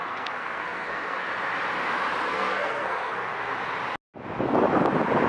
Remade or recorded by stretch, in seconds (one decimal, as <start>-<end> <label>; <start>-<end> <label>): 0.0-1.3 remade; 1.3-2.2 recorded; 2.2-3.5 remade; 3.5-5.3 recorded